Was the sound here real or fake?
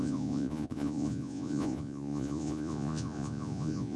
fake